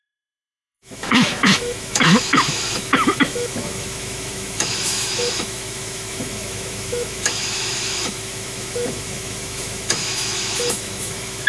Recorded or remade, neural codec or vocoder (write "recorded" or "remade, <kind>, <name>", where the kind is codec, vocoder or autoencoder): remade, autoencoder, DAC-VAE